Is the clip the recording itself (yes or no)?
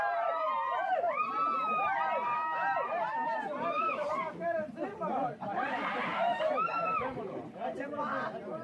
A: no